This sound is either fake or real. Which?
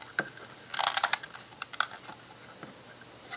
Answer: real